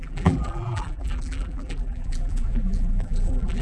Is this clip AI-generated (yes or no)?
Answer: yes